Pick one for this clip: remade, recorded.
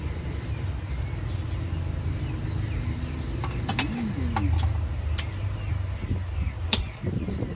recorded